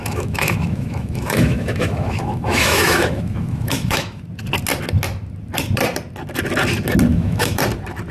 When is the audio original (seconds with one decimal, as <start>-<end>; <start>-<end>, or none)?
4.2-7.1; 7.6-8.1